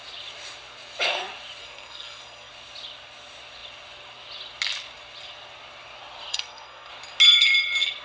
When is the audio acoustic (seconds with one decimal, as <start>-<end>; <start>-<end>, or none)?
0.0-1.6; 2.5-6.3; 6.9-8.0